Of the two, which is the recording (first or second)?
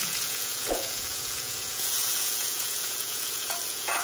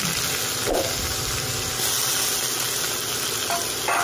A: second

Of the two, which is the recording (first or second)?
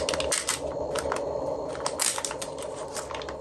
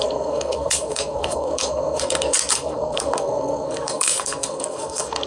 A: first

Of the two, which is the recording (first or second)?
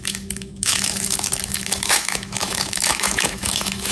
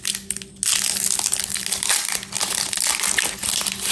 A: second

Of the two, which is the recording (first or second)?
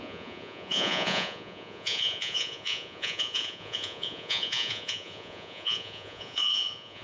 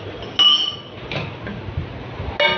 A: second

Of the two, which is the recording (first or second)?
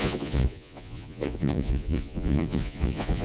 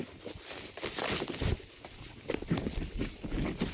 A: second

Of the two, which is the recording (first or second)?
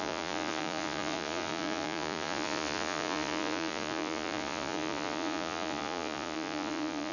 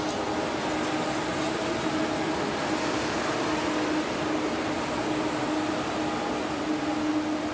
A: second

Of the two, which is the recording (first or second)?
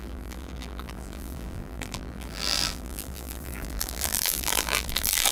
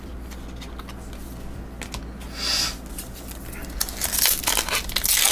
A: second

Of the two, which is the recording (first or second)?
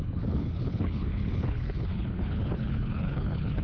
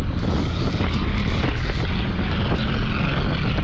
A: second